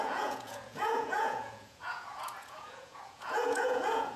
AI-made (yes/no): yes